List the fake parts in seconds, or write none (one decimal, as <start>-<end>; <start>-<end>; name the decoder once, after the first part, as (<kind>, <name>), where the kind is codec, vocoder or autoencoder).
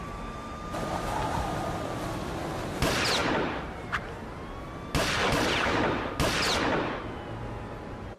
3.2-4.0 (vocoder, BigVGAN v2)